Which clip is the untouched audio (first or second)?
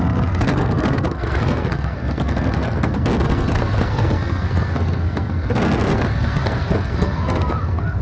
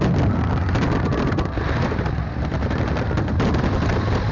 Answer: second